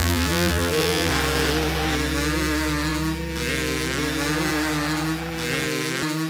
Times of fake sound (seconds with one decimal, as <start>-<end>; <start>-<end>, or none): 0.0-1.1